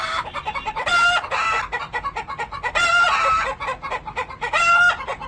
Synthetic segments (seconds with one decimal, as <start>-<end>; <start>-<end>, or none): 0.0-0.9